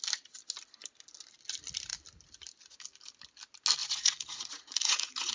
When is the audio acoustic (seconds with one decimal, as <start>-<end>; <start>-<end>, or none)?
0.0-3.8